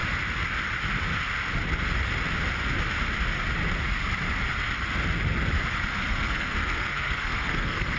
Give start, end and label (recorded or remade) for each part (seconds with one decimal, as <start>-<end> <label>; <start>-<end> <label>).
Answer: 0.0-6.1 recorded; 6.1-8.0 remade